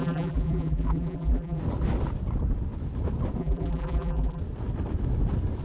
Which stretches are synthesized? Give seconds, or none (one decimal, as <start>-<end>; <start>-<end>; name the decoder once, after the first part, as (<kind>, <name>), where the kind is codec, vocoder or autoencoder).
0.0-1.6 (vocoder, BigVGAN v2); 3.4-4.4